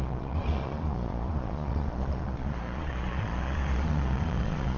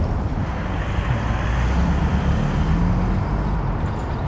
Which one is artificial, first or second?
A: first